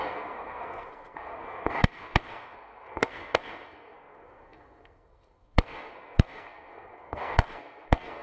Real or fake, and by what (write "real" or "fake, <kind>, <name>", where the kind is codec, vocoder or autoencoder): fake, codec, SNAC